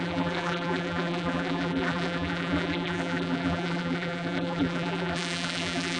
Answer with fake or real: fake